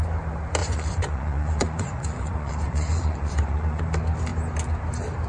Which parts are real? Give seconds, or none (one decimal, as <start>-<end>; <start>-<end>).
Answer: 0.0-0.6; 3.8-5.3